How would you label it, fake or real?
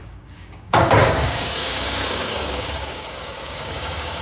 fake